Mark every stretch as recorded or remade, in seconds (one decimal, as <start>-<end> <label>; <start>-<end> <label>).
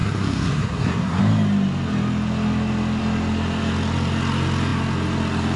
0.0-1.2 remade; 1.2-5.6 recorded